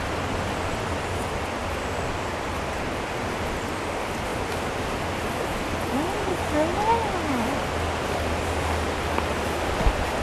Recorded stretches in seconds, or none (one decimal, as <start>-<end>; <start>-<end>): 0.0-10.2

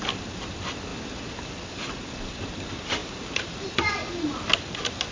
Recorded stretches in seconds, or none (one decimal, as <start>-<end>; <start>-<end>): 0.0-3.0; 3.9-5.1

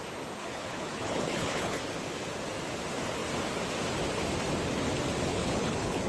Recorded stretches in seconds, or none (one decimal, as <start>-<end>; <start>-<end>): 0.0-0.4; 1.8-5.3

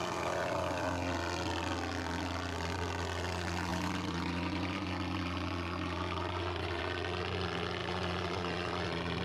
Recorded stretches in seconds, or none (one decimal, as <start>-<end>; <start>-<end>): 0.0-3.7; 6.8-7.8

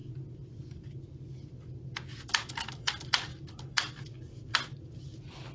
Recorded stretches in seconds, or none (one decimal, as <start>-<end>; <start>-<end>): 0.0-5.5

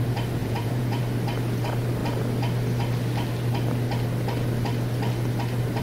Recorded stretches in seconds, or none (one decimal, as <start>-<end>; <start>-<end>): 0.0-0.4; 1.0-5.8

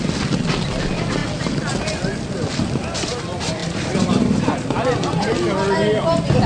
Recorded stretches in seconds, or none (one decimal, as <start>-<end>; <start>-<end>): 0.0-6.5

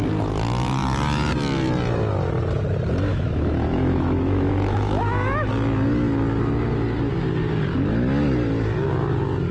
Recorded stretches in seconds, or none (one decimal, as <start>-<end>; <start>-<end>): 0.0-3.1; 5.5-9.5